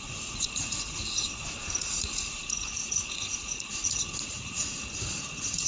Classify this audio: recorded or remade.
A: remade